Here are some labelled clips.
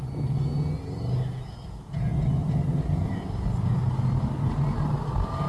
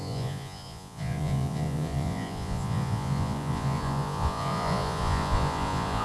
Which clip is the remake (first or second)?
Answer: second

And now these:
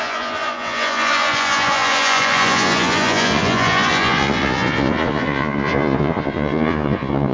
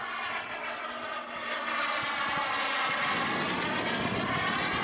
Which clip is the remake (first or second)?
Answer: first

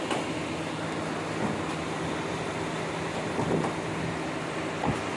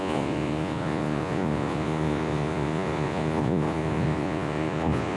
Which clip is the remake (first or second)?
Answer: second